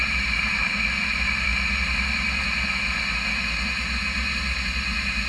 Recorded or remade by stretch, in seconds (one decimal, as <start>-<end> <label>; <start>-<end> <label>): 0.0-5.3 recorded